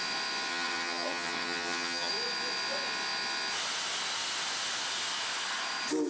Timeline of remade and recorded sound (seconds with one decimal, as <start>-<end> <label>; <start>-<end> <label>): 0.0-0.5 recorded; 0.5-2.1 remade; 2.1-6.1 recorded